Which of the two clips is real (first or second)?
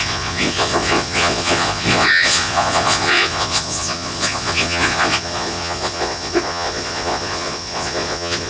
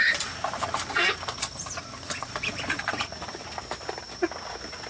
second